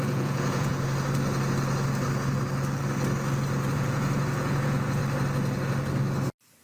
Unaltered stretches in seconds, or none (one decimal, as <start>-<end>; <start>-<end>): 0.7-3.7; 5.0-6.6